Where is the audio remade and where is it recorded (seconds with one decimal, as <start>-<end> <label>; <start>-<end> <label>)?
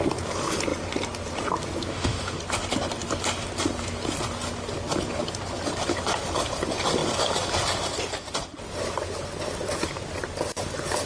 0.0-1.9 recorded; 1.9-2.4 remade; 2.4-11.1 recorded